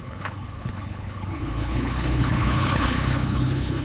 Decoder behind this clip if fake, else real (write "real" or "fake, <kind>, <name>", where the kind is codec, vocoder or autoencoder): fake, codec, HILCodec